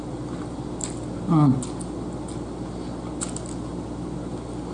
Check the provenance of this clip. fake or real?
real